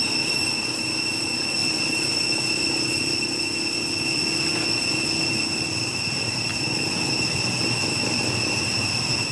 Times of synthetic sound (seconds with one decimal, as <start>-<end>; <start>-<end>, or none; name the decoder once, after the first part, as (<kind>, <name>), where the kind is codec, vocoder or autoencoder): none

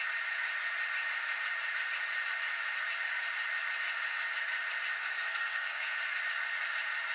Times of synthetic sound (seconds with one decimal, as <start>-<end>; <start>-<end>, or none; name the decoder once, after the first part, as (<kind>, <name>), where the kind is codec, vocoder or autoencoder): 5.0-6.2 (codec, SNAC)

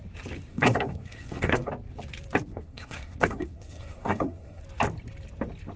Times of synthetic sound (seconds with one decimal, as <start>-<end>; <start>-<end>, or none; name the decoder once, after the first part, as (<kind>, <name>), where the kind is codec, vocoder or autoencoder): 0.5-1.7 (codec, SNAC); 2.5-4.6

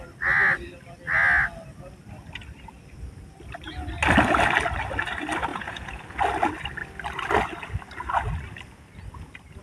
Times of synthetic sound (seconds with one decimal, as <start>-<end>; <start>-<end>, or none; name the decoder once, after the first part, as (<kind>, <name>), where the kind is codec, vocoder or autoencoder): 5.5-6.0 (vocoder, Vocos)

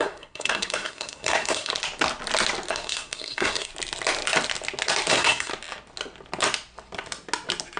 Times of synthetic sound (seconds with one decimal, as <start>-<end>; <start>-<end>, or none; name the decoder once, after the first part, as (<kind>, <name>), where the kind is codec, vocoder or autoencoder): 0.0-1.7 (codec, SNAC); 2.7-3.7; 5.1-5.5

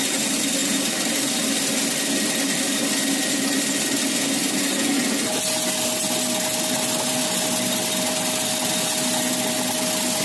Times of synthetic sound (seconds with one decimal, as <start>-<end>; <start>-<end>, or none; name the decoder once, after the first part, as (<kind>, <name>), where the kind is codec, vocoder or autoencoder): none